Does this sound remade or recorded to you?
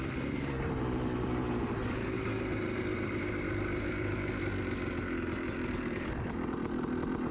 remade